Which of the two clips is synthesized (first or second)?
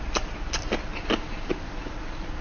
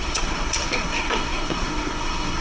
second